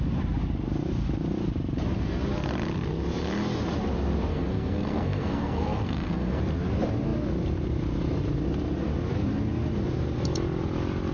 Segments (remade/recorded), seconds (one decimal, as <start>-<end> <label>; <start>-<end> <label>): 0.0-4.3 recorded; 4.3-6.4 remade; 6.4-11.1 recorded